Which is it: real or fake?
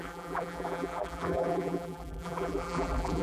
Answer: fake